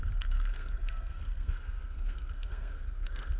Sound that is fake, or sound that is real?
fake